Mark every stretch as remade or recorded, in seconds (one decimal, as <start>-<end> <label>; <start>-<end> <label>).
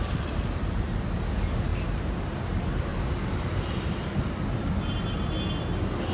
0.0-1.7 recorded; 1.7-2.2 remade; 2.2-2.9 recorded; 2.9-3.6 remade; 3.6-6.1 recorded